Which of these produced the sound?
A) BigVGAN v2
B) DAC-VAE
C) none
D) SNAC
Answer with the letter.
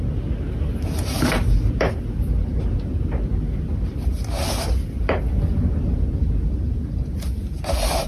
C